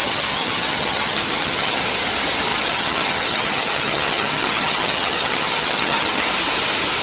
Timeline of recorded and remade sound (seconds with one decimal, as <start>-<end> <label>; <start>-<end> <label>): 0.0-1.8 remade; 1.8-2.5 recorded; 2.5-6.3 remade; 6.3-7.0 recorded